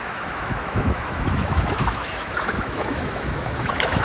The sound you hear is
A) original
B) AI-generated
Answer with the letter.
B